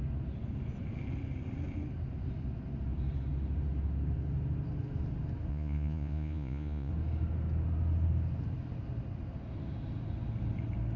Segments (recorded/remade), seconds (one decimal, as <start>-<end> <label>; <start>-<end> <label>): 0.0-5.5 recorded; 5.5-6.9 remade; 6.9-11.0 recorded